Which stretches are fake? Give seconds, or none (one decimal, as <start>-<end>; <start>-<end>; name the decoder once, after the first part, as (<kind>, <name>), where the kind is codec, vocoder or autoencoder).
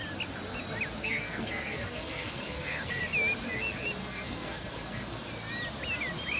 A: 1.0-3.0 (codec, SNAC); 4.0-5.2